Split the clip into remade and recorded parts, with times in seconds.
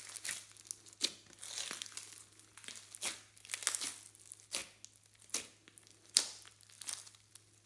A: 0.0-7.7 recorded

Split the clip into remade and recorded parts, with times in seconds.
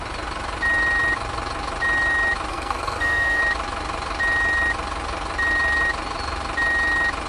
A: 0.0-2.5 recorded; 2.5-3.4 remade; 3.4-7.3 recorded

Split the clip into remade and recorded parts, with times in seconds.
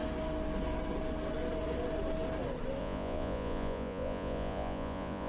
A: 0.0-2.8 recorded; 2.8-5.3 remade